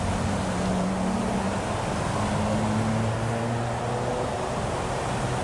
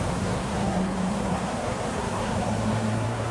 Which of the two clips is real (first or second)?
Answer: first